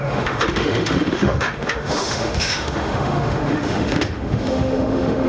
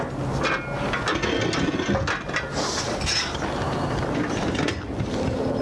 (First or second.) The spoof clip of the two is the first